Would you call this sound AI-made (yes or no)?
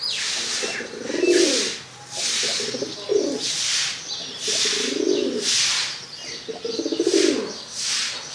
no